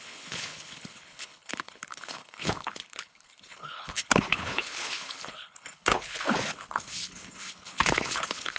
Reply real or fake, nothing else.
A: fake